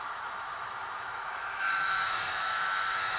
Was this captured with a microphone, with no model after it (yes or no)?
no